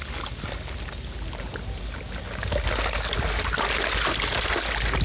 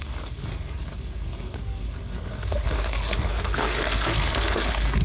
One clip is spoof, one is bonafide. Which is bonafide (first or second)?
first